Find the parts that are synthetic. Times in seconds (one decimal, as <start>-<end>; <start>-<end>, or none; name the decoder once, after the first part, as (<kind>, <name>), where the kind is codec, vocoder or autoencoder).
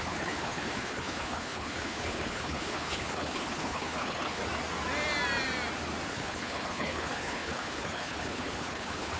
0.0-4.4 (codec, HILCodec); 6.1-9.2